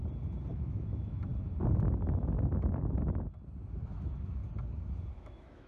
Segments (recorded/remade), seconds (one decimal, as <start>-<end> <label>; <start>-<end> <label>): 0.0-0.5 recorded; 0.5-1.3 remade; 1.3-3.9 recorded; 3.9-4.4 remade; 4.4-5.1 recorded; 5.1-5.7 remade